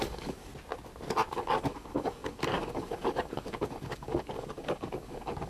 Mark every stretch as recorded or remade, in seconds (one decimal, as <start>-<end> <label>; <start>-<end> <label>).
0.0-0.5 remade; 0.5-1.3 recorded; 1.3-5.5 remade